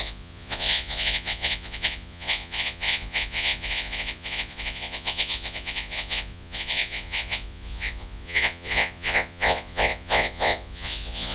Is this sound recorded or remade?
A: remade